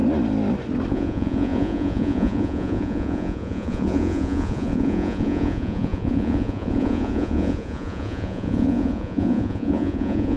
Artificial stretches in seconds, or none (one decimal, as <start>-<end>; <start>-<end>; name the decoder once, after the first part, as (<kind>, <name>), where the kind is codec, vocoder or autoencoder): 0.9-10.4 (vocoder, Vocos)